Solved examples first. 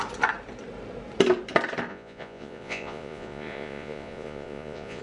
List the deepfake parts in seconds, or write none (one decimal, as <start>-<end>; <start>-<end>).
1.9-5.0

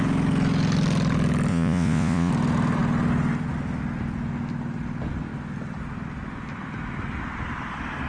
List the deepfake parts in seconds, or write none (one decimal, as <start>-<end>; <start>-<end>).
1.5-2.3

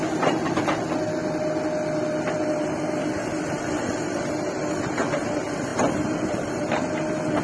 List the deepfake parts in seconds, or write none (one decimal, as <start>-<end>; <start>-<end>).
none